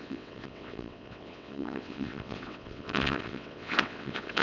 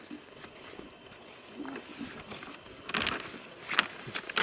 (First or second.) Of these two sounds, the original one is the second